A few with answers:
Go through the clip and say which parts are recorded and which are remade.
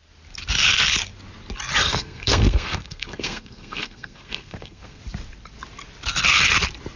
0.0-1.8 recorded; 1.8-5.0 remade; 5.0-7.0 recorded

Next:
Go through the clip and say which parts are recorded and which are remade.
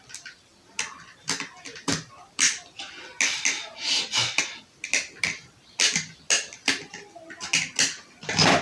0.0-8.6 recorded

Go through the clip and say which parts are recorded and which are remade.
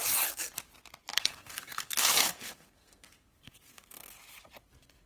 0.0-1.1 recorded; 1.1-4.2 remade; 4.2-5.1 recorded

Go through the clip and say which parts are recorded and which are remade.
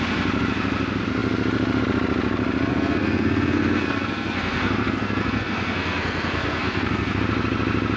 0.0-2.7 recorded; 2.7-7.2 remade; 7.2-8.0 recorded